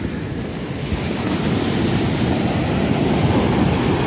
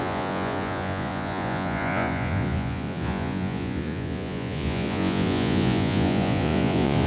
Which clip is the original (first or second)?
first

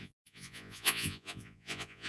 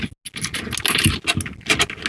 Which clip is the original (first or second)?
second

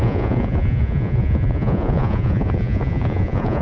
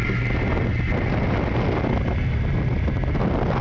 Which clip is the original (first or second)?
second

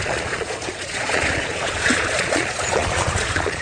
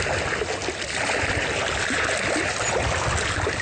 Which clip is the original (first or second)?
second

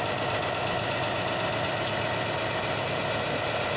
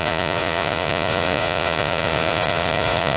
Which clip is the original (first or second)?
first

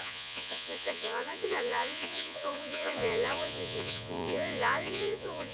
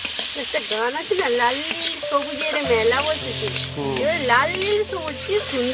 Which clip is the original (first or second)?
second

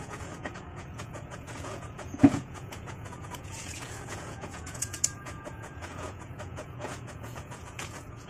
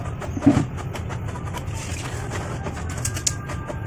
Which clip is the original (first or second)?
second